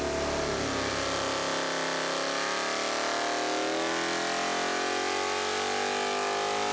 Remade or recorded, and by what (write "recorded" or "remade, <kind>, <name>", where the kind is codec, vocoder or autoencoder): recorded